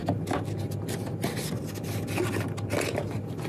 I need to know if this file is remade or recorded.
recorded